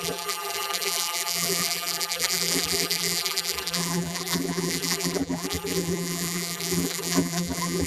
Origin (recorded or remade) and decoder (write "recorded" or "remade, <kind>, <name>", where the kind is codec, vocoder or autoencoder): remade, vocoder, BigVGAN v2